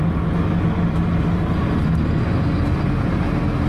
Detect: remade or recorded recorded